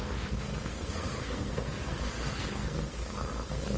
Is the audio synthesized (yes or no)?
yes